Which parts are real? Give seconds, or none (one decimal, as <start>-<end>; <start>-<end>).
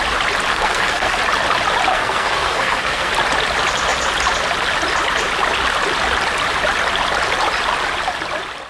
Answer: 0.0-0.5; 1.2-1.9; 3.1-8.7